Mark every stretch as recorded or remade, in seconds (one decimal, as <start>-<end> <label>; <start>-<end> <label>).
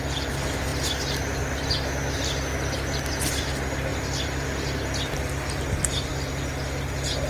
0.0-3.9 remade; 3.9-5.1 recorded; 5.1-7.3 remade